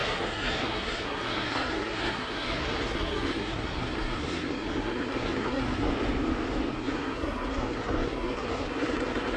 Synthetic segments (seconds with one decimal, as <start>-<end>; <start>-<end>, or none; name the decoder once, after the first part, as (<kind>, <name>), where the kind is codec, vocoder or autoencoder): 0.0-5.9 (codec, SNAC); 6.7-9.4